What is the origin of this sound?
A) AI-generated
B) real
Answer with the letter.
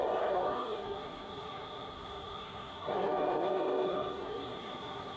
A